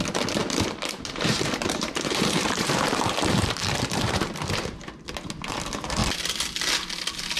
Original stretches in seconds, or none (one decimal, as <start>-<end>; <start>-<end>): 0.0-0.4; 4.8-7.4

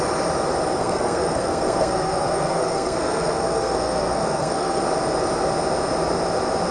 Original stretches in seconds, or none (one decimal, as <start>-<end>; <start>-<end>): 0.0-0.8; 4.8-6.7

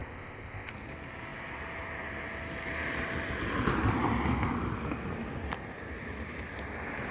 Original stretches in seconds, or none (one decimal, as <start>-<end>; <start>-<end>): 0.7-7.1

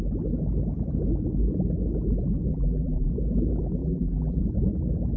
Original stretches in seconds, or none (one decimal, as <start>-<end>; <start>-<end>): 0.0-2.5; 3.1-3.8; 4.4-5.2

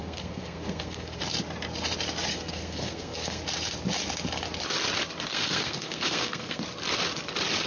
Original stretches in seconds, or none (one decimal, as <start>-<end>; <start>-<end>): 1.2-2.3; 3.4-5.3; 6.6-7.7

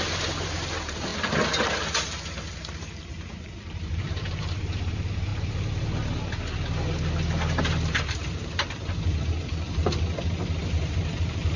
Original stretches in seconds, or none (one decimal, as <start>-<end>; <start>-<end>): 1.1-3.0; 5.3-7.6; 9.8-10.6

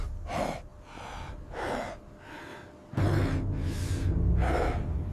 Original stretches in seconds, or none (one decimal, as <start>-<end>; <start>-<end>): 0.0-5.1